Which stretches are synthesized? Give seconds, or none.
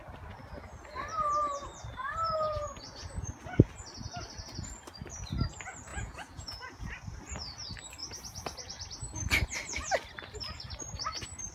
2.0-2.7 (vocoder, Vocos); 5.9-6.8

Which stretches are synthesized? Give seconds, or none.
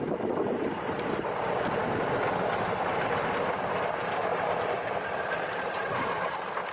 none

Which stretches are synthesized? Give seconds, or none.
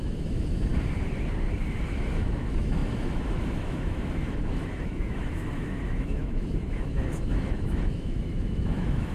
0.0-0.7 (autoencoder, DAC-VAE); 1.9-9.1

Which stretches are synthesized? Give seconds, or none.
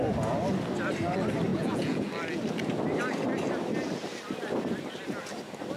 1.5-2.1 (vocoder, Vocos)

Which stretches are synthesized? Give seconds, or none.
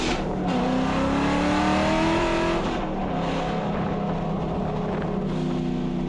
none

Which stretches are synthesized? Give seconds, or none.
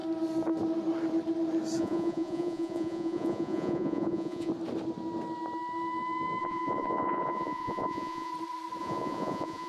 1.8-4.5 (vocoder, Vocos); 6.4-8.3; 8.8-9.7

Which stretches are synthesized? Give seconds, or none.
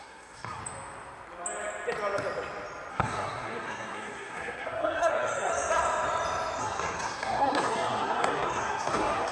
0.0-0.6 (codec, SNAC); 2.9-5.5; 6.6-9.3